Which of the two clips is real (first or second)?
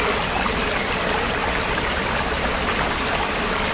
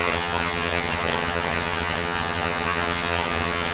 first